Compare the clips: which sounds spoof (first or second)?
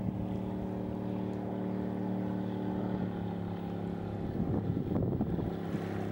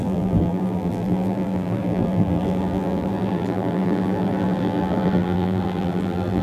second